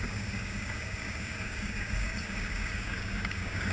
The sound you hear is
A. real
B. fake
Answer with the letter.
B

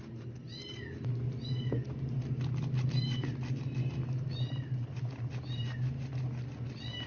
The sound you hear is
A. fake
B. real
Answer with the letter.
B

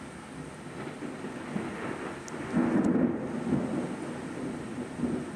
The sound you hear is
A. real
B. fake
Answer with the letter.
A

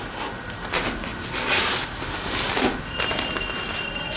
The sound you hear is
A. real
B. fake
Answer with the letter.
A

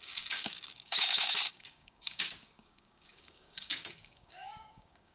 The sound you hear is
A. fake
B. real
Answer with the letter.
A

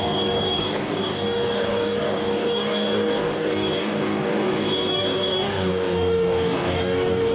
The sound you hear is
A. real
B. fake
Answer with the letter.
B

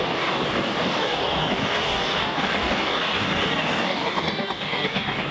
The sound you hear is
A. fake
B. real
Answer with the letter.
A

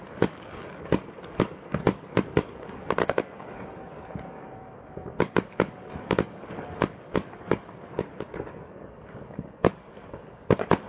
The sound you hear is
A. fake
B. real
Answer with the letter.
A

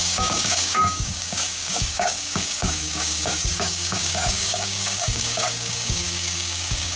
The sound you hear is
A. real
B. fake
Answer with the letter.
B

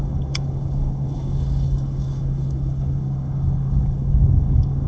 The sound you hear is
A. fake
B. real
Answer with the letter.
A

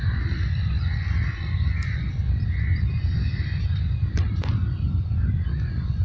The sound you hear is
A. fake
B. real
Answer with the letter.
B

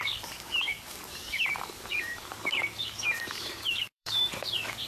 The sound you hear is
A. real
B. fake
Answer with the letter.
B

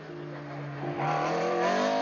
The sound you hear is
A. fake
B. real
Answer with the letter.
B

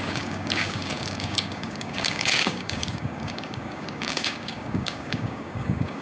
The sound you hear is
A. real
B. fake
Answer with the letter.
B